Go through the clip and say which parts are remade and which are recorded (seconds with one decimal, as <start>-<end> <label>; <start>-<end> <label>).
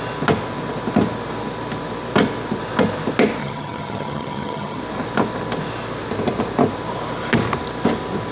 0.0-3.4 recorded; 3.4-4.8 remade; 4.8-8.3 recorded